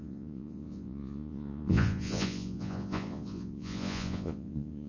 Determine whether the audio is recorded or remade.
remade